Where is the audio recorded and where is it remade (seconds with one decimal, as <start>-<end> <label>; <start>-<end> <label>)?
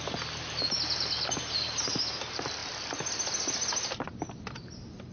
0.0-5.1 recorded